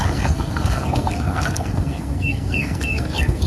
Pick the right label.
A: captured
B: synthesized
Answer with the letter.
B